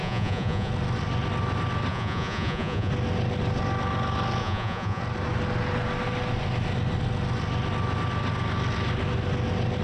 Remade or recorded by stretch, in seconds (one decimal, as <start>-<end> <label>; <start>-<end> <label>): 0.0-0.7 remade; 0.7-1.9 recorded; 1.9-2.9 remade; 2.9-4.4 recorded; 4.4-5.0 remade; 5.0-9.8 recorded